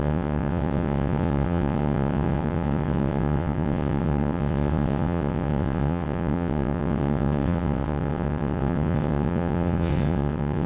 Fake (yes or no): yes